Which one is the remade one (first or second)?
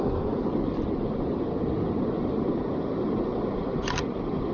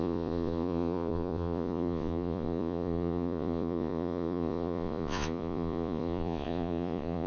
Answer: second